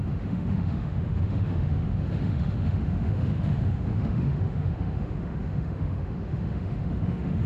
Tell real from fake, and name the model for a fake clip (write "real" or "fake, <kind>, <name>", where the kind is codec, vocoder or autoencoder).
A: fake, autoencoder, DAC-VAE